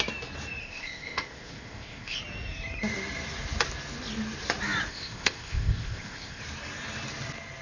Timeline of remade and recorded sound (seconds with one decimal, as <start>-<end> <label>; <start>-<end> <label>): 0.0-0.6 recorded; 0.6-2.2 remade; 2.2-4.9 recorded; 4.9-6.4 remade; 6.4-7.6 recorded